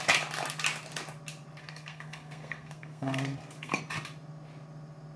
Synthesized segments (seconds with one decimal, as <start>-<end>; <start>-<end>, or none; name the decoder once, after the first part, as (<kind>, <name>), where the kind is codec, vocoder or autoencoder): 1.6-3.8 (codec, SNAC)